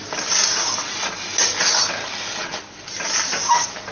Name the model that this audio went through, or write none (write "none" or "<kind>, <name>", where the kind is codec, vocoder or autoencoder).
none